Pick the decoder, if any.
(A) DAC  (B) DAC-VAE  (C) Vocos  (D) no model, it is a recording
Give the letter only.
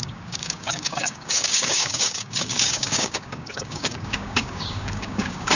A